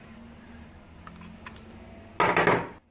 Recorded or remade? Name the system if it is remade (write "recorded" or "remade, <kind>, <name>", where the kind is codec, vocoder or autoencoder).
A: recorded